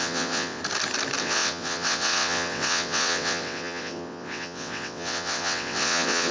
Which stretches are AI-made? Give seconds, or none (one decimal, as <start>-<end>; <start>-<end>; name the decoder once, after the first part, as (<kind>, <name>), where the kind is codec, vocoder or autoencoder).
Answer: 0.0-0.6 (vocoder, WaveNeXt); 1.2-6.3